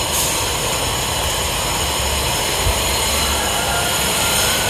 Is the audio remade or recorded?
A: recorded